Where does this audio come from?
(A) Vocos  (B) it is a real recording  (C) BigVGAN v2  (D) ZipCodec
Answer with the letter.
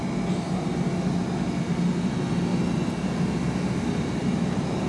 B